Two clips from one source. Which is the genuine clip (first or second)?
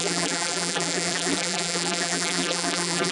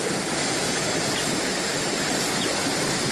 second